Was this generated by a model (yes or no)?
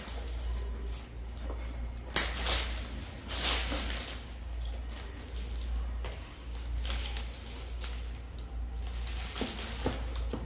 no